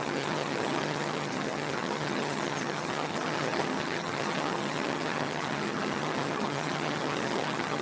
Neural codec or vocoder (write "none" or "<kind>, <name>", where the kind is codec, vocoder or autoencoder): vocoder, HiFi-GAN